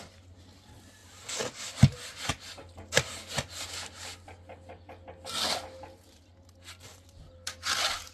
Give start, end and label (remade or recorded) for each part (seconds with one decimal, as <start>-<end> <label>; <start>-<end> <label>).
0.0-8.1 recorded